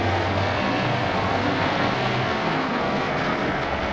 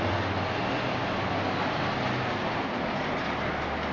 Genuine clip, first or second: second